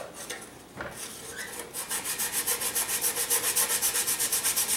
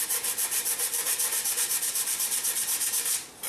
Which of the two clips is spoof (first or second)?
second